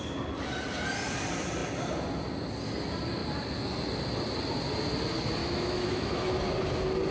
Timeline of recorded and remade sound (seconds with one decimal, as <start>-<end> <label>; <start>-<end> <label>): 0.0-5.4 recorded; 5.4-6.4 remade; 6.4-7.1 recorded